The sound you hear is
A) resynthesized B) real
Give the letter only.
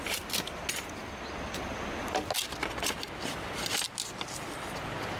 B